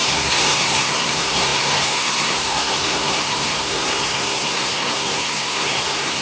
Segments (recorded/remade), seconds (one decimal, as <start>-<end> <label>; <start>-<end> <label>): 0.0-6.2 remade